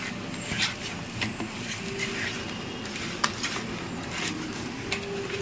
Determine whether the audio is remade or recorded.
recorded